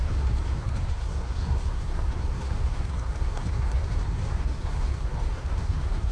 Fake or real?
fake